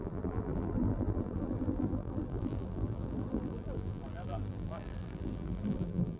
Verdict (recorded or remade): remade